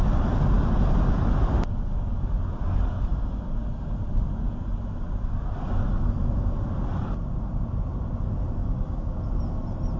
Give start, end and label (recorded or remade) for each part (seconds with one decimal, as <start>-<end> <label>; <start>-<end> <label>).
0.0-8.6 recorded; 8.6-9.2 remade; 9.2-10.0 recorded